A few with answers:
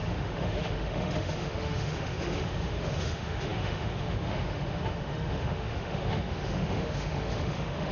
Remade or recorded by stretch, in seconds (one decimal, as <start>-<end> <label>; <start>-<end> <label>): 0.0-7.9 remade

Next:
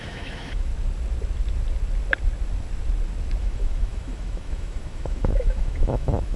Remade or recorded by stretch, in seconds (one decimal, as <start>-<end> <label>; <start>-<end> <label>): 0.0-0.7 remade; 0.7-3.4 recorded; 3.4-6.4 remade

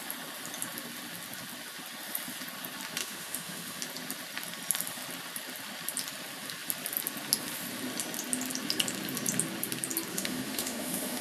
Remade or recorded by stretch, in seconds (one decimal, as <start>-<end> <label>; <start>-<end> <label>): 0.0-3.0 recorded; 3.0-3.8 remade; 3.8-10.1 recorded; 10.1-11.2 remade

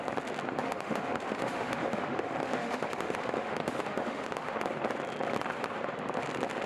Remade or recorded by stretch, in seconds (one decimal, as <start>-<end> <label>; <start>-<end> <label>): 0.0-0.6 recorded; 0.6-4.6 remade; 4.6-6.7 recorded

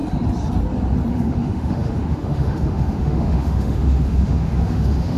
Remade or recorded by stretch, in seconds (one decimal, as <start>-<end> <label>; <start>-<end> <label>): 0.0-1.1 recorded; 1.1-5.2 remade

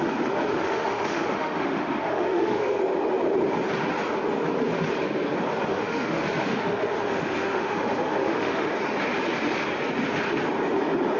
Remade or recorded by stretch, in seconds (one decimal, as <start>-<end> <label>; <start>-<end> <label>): 0.0-0.5 recorded; 0.5-2.8 remade; 2.8-5.7 recorded; 5.7-8.7 remade; 8.7-11.2 recorded

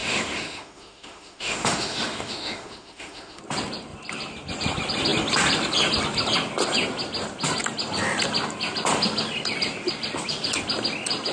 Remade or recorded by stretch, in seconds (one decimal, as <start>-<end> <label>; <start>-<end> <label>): 0.0-3.4 remade; 3.4-11.3 recorded

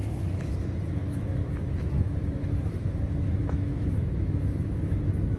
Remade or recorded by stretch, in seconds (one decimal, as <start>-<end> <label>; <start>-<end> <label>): 0.0-5.4 remade